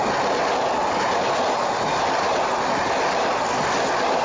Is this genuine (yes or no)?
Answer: yes